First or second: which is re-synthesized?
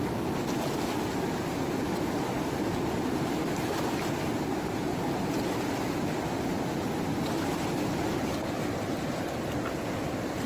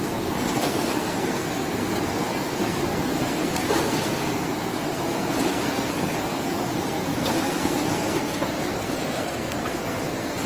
second